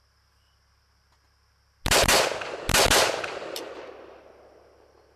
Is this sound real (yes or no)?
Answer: yes